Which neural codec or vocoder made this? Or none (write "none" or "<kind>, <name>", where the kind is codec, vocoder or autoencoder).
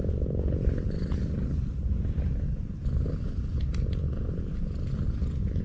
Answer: none